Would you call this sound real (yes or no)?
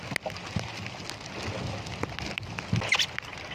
yes